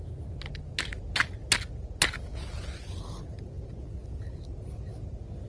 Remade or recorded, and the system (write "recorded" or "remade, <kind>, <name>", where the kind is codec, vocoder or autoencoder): recorded